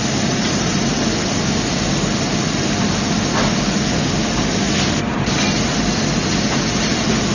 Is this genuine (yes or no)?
yes